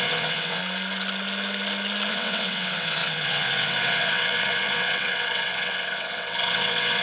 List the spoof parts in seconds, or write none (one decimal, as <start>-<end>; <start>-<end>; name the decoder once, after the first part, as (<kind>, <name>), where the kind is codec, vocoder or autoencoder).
0.0-0.6 (vocoder, WaveNeXt); 2.1-7.0